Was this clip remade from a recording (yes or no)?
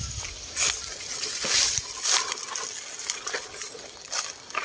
no